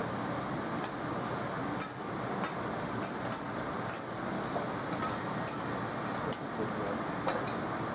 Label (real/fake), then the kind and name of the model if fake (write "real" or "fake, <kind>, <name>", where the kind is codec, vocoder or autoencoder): real